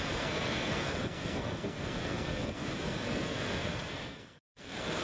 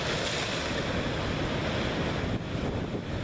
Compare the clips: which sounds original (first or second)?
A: second